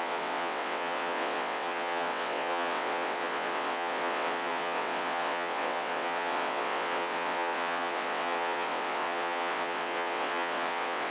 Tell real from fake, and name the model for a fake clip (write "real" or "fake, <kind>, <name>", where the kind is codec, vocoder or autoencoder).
fake, vocoder, WaveNeXt